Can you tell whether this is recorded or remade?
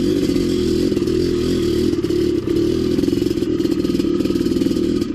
recorded